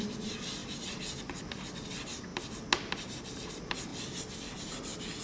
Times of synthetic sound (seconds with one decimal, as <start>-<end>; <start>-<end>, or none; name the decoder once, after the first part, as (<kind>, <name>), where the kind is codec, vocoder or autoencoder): 3.9-5.2 (vocoder, BigVGAN v2)